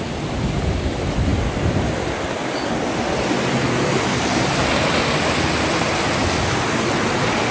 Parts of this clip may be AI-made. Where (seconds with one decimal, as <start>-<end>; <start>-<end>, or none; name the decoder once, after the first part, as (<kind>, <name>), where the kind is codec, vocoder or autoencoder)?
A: none